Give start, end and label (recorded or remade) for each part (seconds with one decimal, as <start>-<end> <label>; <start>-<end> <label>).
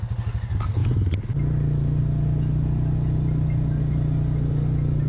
0.0-5.1 recorded